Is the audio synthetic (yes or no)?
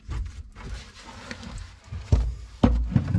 no